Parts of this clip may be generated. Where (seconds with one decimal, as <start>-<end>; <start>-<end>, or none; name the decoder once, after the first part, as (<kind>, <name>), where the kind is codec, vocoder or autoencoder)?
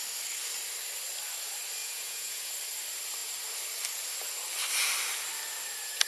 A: 1.8-2.5 (vocoder, Vocos)